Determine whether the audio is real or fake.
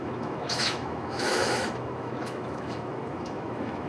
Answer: fake